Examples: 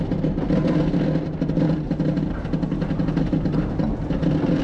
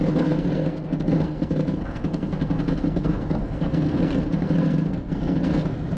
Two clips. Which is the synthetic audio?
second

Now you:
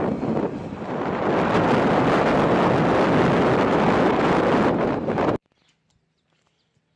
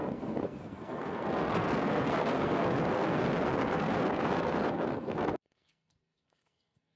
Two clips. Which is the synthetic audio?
second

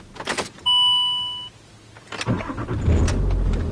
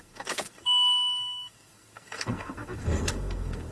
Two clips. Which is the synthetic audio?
second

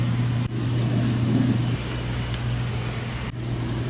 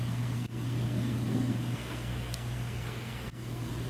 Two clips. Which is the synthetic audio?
second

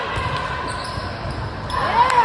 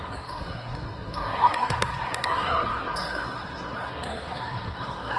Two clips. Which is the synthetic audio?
second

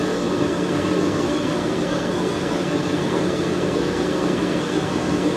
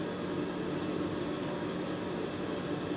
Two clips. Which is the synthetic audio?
first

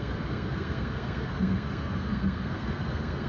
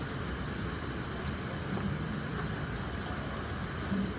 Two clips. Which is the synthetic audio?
first